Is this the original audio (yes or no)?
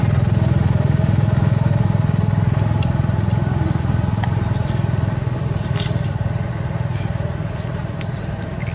yes